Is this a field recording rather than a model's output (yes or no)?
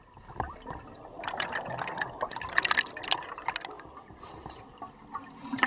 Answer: yes